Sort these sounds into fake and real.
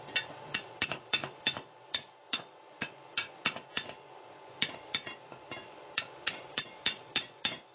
fake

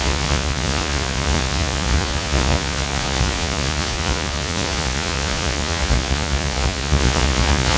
fake